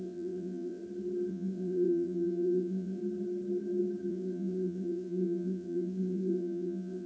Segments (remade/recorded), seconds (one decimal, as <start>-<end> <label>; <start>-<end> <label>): 0.0-0.8 remade; 0.8-1.3 recorded; 1.3-3.0 remade; 3.0-4.1 recorded; 4.1-7.1 remade

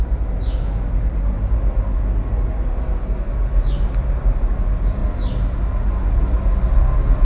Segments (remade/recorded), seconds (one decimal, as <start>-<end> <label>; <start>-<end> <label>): 0.0-7.2 recorded